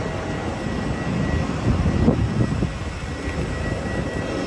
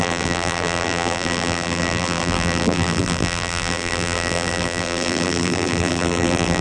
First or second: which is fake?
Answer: second